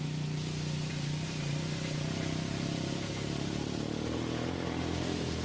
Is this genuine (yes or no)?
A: yes